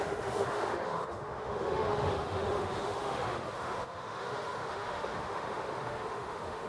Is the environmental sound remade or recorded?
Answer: remade